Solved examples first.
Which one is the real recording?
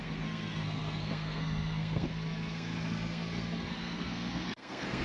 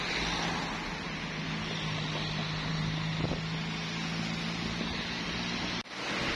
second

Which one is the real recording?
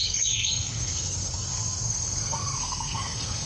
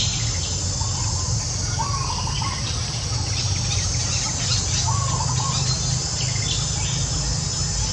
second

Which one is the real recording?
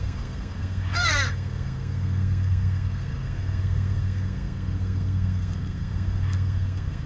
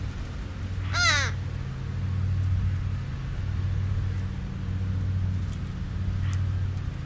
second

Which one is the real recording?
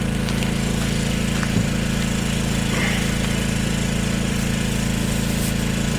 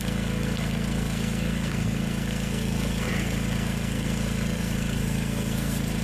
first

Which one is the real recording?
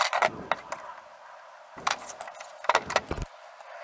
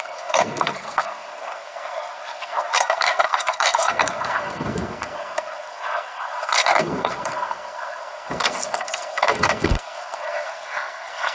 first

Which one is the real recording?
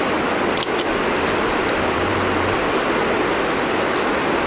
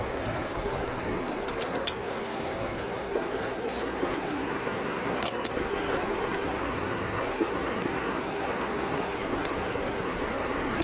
first